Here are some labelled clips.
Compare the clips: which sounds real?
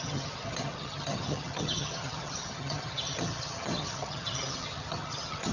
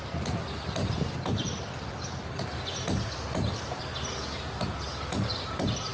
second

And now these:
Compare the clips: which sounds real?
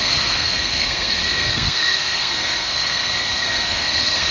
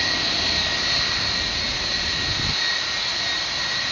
second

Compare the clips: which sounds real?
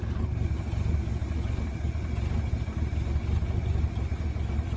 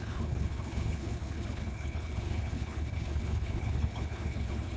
first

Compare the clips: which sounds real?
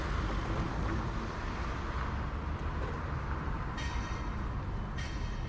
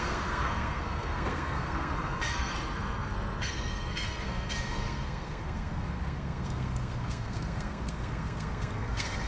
first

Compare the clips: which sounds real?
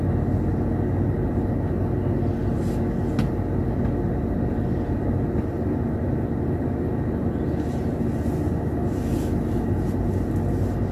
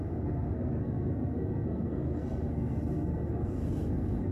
first